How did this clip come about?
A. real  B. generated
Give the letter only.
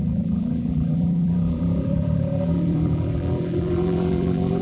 B